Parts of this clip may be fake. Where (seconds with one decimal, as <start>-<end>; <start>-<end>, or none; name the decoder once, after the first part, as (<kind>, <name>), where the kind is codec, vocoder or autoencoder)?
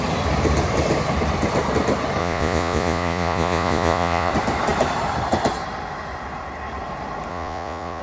2.2-4.3 (vocoder, Vocos); 7.3-8.0